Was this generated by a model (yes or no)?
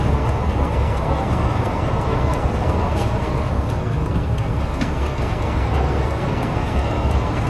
yes